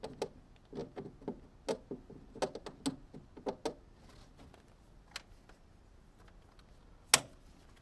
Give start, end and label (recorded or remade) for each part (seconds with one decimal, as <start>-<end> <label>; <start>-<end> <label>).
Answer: 0.0-7.8 recorded